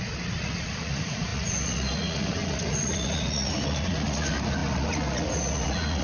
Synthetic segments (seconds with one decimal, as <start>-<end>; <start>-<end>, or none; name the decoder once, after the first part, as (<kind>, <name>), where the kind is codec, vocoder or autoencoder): 0.0-6.0 (vocoder, Vocos)